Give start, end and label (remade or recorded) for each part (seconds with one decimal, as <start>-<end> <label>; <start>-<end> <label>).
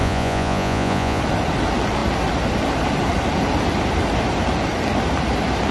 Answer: 0.0-1.2 remade; 1.2-5.7 recorded